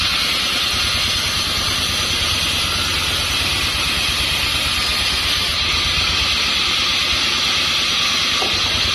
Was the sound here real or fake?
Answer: real